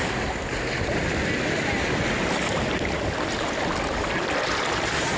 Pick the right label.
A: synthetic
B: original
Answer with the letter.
B